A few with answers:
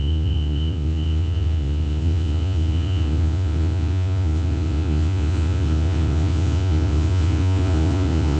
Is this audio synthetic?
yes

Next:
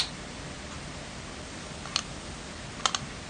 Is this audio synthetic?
no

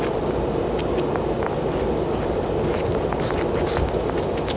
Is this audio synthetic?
no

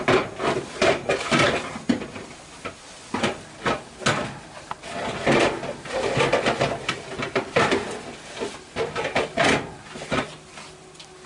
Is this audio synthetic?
no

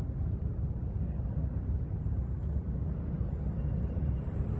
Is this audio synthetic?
no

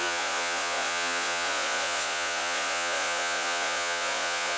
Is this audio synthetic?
yes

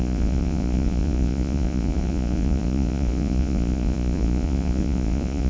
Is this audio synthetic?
yes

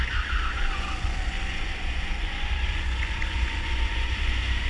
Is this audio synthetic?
yes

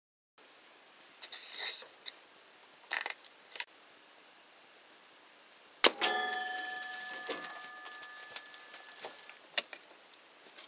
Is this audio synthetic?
no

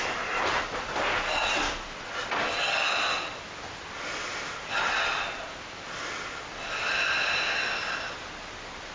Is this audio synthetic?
no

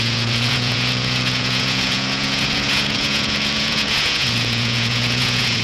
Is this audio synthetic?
yes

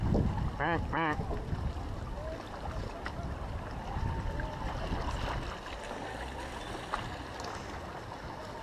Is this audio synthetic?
no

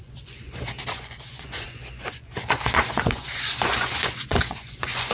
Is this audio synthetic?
yes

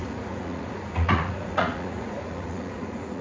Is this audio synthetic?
yes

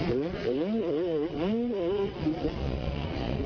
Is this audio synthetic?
yes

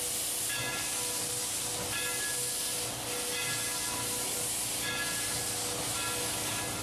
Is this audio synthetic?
no